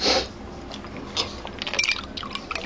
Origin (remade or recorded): recorded